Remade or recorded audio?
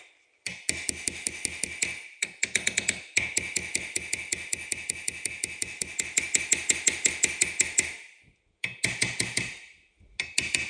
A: recorded